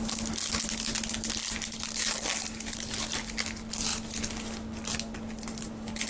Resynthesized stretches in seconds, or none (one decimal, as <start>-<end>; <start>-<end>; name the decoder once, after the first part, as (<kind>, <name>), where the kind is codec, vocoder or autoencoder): none